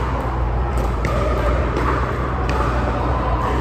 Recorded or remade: remade